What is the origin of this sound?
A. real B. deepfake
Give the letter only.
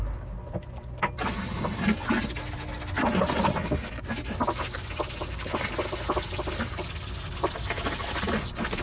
A